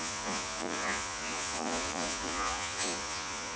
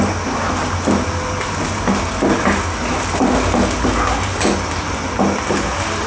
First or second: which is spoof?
first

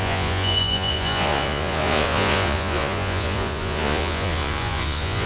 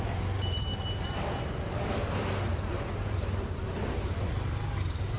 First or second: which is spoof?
first